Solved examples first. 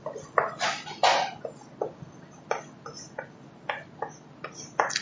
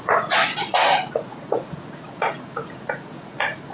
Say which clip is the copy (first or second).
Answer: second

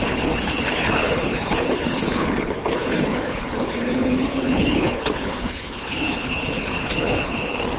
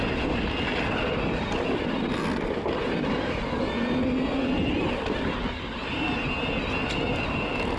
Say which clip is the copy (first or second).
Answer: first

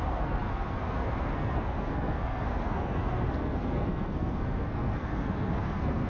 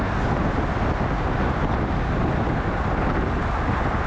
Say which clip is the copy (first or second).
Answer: first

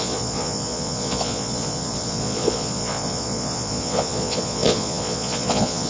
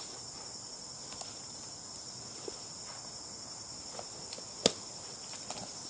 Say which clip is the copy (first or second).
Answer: first